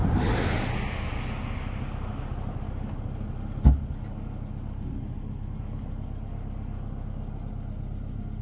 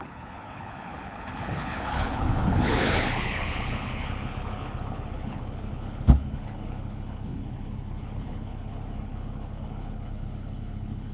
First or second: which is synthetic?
second